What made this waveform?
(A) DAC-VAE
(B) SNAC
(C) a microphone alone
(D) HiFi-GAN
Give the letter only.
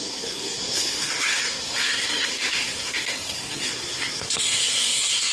B